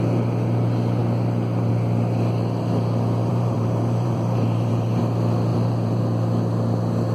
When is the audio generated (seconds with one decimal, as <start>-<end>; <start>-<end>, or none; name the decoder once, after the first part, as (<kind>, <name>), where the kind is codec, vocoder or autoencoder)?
3.3-5.0 (vocoder, BigVGAN v2); 5.5-6.0